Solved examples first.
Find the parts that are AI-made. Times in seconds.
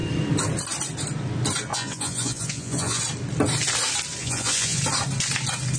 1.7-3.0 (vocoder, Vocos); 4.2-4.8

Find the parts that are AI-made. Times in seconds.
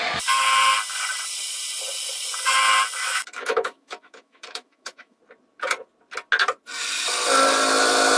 3.0-5.2 (autoencoder, DAC-VAE)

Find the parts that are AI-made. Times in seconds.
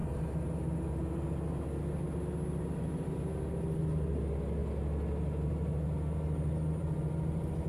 none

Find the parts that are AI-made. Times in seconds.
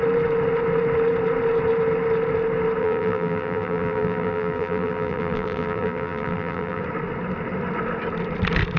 2.8-6.8 (vocoder, BigVGAN v2)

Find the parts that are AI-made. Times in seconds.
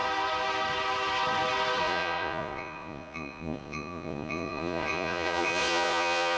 1.8-6.4 (vocoder, Vocos)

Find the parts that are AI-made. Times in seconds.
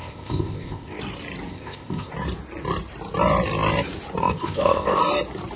0.0-1.0 (codec, ZipCodec); 1.5-2.1; 4.2-5.0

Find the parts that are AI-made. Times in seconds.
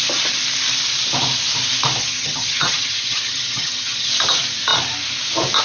2.0-4.1 (vocoder, HiFi-GAN)